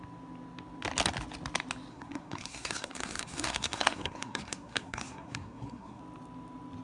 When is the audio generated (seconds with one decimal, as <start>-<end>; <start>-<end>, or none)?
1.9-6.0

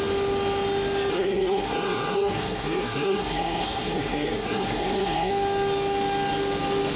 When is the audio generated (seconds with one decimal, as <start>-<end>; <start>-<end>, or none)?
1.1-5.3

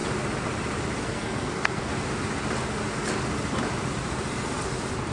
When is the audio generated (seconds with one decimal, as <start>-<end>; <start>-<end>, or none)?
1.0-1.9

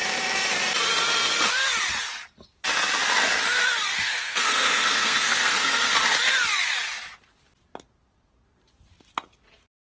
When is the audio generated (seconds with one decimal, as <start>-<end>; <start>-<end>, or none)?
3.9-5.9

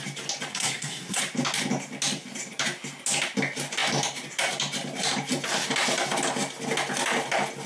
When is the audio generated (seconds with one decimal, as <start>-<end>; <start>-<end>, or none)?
0.5-1.2

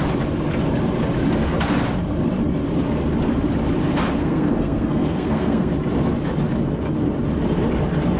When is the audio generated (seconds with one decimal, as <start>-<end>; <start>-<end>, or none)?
4.2-5.7

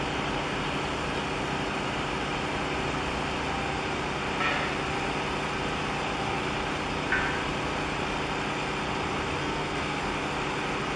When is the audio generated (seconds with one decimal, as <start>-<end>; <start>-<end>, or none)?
9.4-10.0

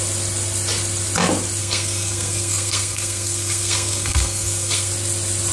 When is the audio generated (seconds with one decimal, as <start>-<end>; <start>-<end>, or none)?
1.6-4.9